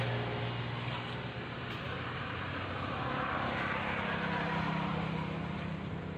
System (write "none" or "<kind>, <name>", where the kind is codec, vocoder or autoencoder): none